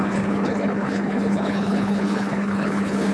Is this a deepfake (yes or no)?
yes